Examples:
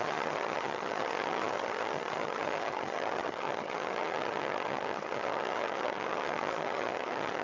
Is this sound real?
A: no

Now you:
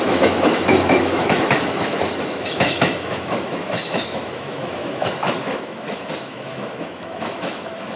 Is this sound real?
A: no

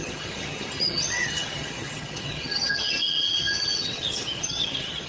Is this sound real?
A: no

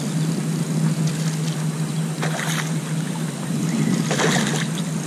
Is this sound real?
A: yes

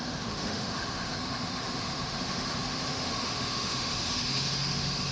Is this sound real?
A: no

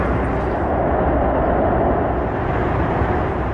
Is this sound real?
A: yes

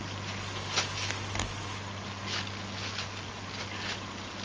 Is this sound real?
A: yes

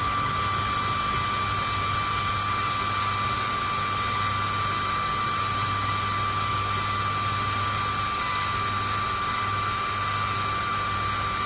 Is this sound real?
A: yes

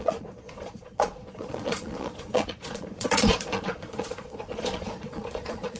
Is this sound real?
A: no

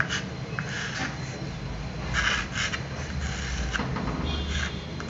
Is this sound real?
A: yes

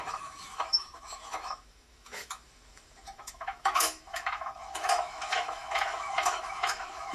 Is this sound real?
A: no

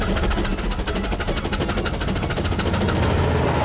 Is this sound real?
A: yes